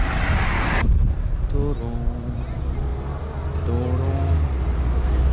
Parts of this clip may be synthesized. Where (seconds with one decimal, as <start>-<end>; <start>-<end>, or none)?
none